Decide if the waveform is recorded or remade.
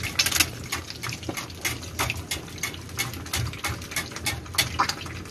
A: recorded